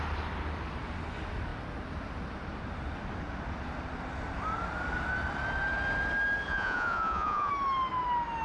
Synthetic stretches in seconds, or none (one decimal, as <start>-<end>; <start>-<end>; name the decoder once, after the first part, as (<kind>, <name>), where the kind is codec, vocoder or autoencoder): 6.5-7.5 (vocoder, Vocos)